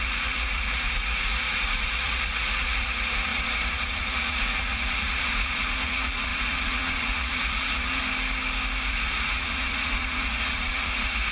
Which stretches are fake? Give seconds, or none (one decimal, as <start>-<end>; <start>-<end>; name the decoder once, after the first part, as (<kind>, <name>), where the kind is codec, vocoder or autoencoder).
0.0-8.0 (vocoder, Vocos); 8.9-11.3